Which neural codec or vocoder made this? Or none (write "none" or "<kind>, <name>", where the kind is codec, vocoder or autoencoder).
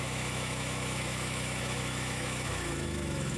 autoencoder, DAC-VAE